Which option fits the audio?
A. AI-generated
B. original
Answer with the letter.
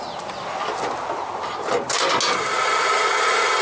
B